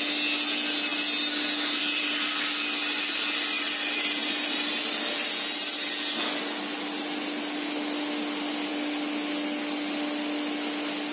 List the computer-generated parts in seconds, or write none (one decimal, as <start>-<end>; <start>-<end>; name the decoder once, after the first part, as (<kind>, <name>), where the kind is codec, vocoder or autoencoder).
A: none